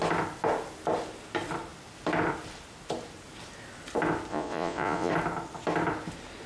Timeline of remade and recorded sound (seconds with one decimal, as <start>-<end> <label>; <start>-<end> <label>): 0.0-4.3 recorded; 4.3-5.1 remade; 5.1-6.5 recorded